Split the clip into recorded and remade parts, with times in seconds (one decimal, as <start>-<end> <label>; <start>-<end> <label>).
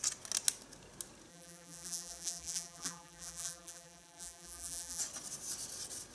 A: 0.0-1.3 recorded; 1.3-5.0 remade; 5.0-6.1 recorded